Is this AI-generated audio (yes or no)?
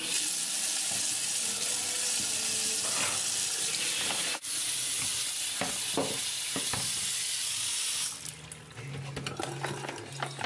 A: no